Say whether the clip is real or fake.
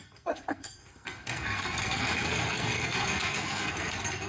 fake